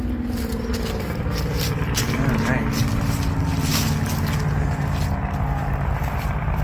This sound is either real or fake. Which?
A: real